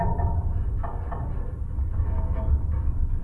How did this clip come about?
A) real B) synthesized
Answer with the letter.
A